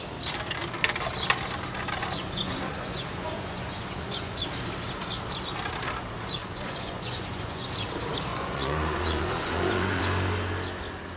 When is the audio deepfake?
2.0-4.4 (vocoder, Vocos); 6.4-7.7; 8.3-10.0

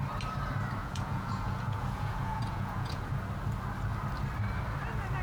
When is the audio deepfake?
0.8-3.1 (vocoder, Vocos)

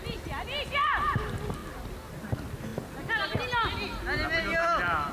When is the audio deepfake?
none

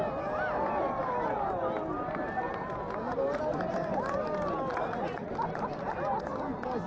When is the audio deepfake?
4.7-5.3 (vocoder, Vocos)

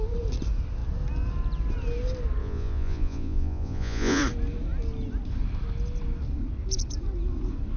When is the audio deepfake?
2.4-4.2 (vocoder, Vocos)